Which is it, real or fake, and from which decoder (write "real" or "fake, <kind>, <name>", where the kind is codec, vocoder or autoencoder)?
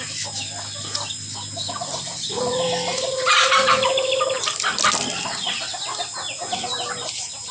real